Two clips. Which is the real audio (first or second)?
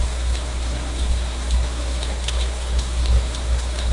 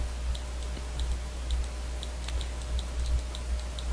second